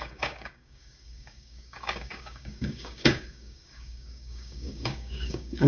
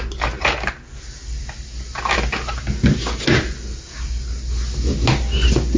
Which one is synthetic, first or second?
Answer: first